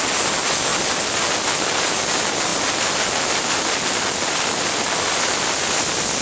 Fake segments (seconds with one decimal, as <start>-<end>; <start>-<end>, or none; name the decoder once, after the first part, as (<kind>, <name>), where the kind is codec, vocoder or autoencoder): none